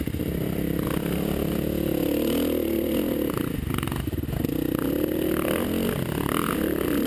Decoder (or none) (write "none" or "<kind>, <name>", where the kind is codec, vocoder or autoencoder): none